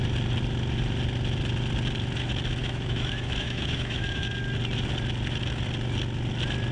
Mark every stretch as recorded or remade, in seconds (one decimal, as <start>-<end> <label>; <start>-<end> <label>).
0.0-2.6 recorded; 2.6-4.3 remade; 4.3-6.7 recorded